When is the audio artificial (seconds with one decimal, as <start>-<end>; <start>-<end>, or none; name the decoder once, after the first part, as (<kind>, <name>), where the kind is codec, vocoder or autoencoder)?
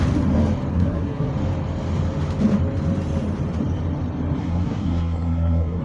0.7-1.3 (codec, SNAC); 4.4-5.8